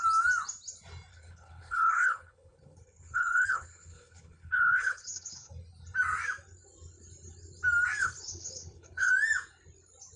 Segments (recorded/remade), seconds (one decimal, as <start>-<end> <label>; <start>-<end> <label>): 0.0-1.1 recorded; 1.1-5.5 remade; 5.5-8.0 recorded; 8.0-9.1 remade; 9.1-10.2 recorded